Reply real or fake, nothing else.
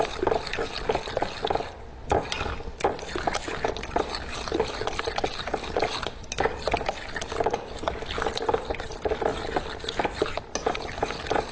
real